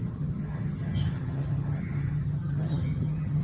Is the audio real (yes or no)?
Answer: no